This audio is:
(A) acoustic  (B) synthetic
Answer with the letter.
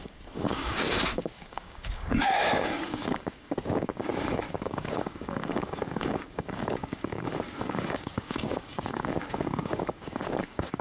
B